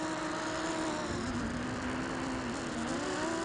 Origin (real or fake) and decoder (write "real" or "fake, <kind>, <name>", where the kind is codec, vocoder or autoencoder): real